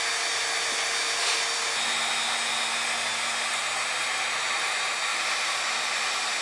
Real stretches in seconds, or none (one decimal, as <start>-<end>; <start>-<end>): 0.0-5.1; 6.0-6.4

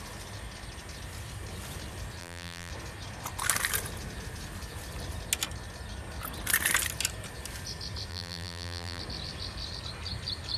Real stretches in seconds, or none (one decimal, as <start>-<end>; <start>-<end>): 0.0-2.2; 2.7-8.1; 9.0-10.6

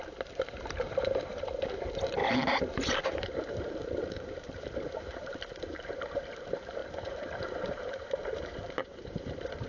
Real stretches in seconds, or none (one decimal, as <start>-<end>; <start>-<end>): none

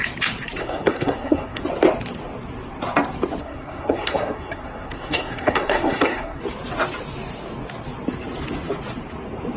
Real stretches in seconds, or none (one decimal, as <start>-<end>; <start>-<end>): 0.0-0.6; 1.6-3.4; 6.4-9.6

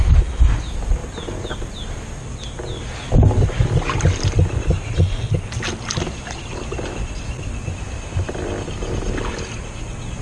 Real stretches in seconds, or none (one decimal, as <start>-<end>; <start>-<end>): 0.0-10.2